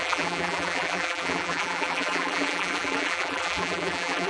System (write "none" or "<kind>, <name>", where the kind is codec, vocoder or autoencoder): vocoder, BigVGAN v2